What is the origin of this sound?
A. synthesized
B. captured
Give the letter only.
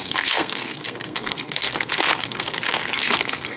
A